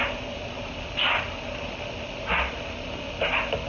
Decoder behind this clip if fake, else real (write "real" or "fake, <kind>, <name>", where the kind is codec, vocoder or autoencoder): real